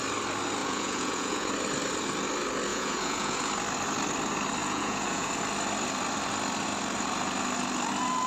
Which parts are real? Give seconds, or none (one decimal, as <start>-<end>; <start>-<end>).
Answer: 0.0-0.6; 1.5-2.7; 3.5-4.6; 5.3-8.3